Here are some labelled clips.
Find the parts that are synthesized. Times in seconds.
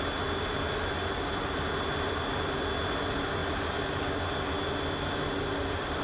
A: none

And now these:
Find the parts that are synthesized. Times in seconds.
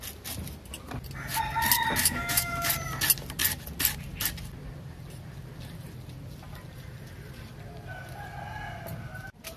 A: 2.0-2.7